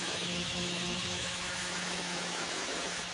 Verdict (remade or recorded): remade